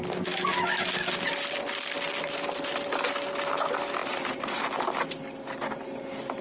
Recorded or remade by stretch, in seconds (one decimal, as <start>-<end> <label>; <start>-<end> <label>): 0.0-4.0 recorded; 4.0-4.8 remade; 4.8-6.4 recorded